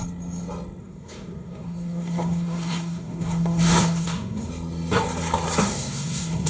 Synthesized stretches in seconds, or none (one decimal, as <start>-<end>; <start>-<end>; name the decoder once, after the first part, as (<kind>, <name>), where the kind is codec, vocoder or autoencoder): 0.8-4.5 (codec, SNAC); 5.6-6.5